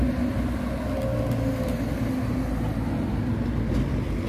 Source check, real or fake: real